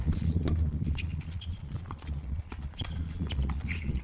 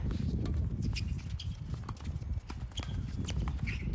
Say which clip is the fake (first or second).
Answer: first